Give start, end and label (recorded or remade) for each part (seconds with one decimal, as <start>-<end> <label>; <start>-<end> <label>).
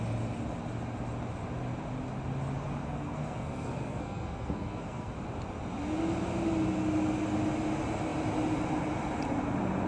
0.0-2.8 recorded; 2.8-5.1 remade; 5.1-9.9 recorded